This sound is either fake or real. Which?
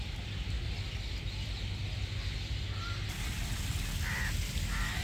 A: real